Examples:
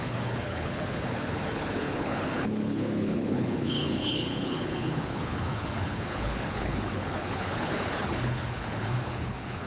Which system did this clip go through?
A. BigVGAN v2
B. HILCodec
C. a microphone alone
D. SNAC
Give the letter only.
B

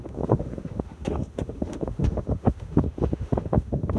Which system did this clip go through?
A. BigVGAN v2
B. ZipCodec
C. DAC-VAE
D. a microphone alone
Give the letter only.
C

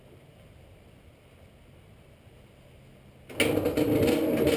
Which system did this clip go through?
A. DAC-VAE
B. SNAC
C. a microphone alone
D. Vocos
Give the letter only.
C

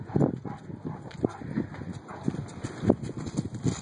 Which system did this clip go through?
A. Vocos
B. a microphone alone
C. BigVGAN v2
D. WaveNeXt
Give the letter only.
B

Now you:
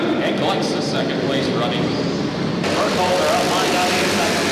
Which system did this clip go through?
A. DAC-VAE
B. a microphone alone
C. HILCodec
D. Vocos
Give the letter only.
B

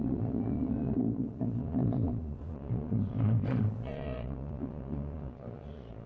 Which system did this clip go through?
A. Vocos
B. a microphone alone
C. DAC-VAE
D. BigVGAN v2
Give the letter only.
A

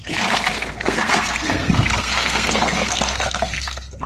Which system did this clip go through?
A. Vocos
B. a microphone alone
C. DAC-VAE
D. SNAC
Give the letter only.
D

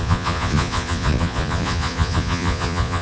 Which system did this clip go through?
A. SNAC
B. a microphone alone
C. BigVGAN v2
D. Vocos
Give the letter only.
D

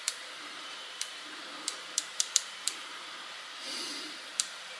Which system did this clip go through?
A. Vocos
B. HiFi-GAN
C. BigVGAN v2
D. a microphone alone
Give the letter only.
C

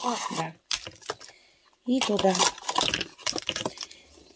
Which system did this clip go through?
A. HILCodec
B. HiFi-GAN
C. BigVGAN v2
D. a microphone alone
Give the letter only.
D